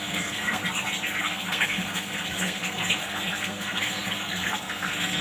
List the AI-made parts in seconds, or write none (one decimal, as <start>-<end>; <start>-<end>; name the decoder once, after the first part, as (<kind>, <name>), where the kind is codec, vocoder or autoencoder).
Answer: 0.0-0.6 (codec, SNAC); 1.2-5.2